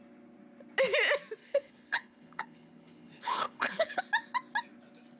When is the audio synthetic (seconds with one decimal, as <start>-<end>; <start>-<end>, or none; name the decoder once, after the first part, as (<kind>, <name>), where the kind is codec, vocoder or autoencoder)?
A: 1.4-4.0 (codec, HILCodec)